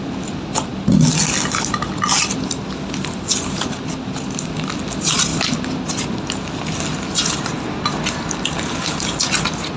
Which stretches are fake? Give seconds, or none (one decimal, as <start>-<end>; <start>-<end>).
none